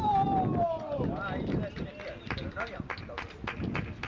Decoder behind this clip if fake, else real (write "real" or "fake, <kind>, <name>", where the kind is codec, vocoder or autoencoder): real